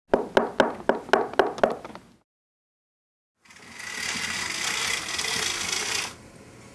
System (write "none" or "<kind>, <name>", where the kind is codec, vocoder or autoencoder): none